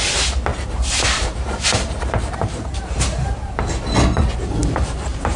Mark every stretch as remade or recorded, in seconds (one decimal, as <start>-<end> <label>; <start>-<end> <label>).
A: 0.0-0.5 recorded; 0.5-3.7 remade; 3.7-4.6 recorded; 4.6-5.4 remade